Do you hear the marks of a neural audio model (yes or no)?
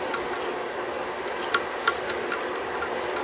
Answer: no